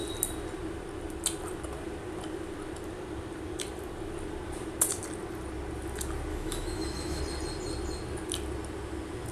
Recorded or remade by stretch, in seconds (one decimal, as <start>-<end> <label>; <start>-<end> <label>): 0.0-6.3 recorded; 6.3-7.2 remade; 7.2-9.3 recorded